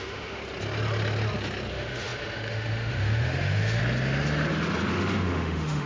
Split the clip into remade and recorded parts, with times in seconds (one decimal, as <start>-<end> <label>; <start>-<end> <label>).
0.0-0.4 remade; 0.4-1.7 recorded; 1.7-3.8 remade; 3.8-4.9 recorded; 4.9-5.9 remade